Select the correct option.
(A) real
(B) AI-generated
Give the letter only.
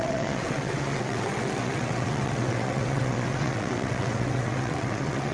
B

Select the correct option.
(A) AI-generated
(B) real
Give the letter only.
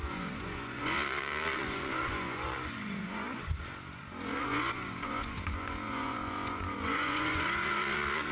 A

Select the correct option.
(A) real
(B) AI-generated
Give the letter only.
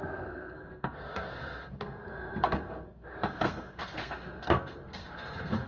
B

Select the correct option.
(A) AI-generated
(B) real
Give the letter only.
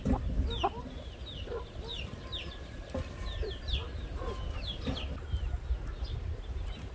B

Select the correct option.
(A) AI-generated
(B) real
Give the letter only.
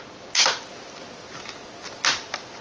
B